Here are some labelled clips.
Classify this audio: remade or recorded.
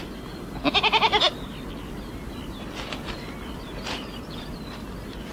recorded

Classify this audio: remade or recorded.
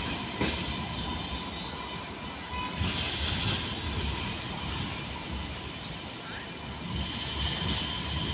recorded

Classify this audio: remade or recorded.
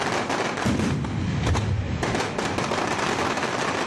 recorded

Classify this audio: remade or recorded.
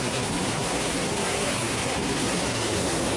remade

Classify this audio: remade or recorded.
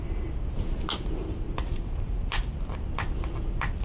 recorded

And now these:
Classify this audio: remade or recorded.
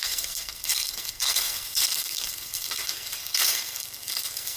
remade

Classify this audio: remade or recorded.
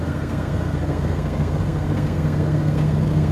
remade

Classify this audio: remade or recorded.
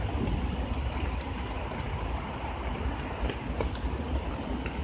recorded